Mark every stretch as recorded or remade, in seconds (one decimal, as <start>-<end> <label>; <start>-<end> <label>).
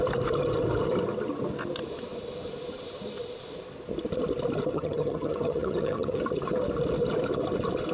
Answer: 0.0-4.7 recorded; 4.7-6.2 remade; 6.2-7.9 recorded